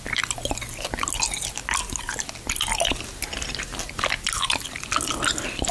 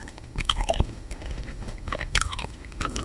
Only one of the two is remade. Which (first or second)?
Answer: second